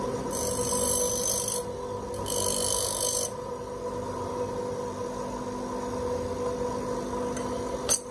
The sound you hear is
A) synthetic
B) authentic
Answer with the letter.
B